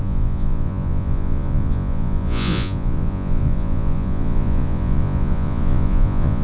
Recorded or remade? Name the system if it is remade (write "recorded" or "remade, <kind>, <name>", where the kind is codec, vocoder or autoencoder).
remade, vocoder, Vocos